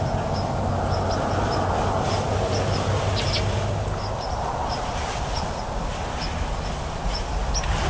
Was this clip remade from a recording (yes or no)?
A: no